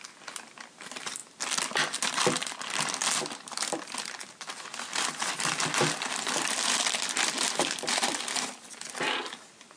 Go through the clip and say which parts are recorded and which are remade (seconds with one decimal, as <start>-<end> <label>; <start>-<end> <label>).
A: 0.0-9.8 recorded